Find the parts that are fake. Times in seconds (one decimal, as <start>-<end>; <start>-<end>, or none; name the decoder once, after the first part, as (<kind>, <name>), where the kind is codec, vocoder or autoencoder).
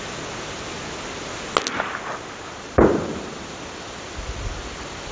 2.5-5.1 (vocoder, BigVGAN v2)